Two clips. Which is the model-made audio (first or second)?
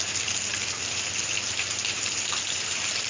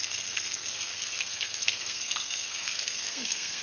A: second